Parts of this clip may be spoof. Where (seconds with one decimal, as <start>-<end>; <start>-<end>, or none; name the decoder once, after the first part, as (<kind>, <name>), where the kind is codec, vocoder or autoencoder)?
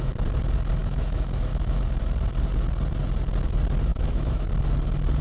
0.8-1.8 (autoencoder, DAC-VAE); 3.9-4.5